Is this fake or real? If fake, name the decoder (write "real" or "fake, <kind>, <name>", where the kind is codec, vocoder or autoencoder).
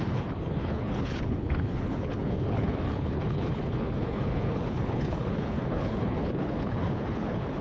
fake, codec, HILCodec